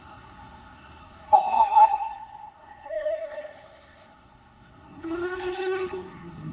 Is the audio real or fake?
fake